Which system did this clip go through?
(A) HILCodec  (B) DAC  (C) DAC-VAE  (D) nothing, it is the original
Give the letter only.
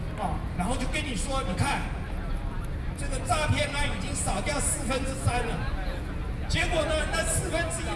D